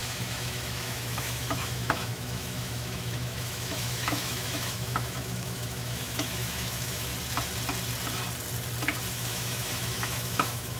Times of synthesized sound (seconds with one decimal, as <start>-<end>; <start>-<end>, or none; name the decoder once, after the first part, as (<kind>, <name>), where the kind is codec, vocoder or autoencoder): 0.0-7.1 (autoencoder, DAC-VAE); 9.1-10.8